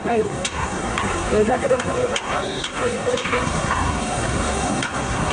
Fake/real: fake